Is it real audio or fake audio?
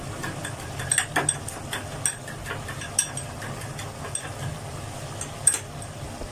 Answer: real